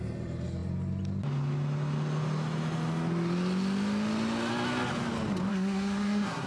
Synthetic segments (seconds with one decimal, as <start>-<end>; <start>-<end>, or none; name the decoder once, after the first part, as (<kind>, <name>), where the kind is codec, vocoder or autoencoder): 5.5-6.5 (codec, SNAC)